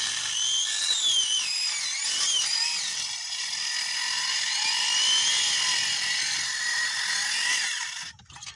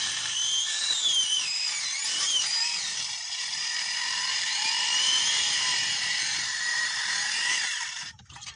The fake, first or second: second